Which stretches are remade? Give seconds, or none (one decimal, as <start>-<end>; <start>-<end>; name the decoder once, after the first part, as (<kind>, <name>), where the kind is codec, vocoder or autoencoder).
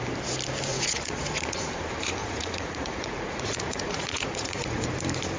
0.7-1.7 (vocoder, Vocos); 2.2-4.8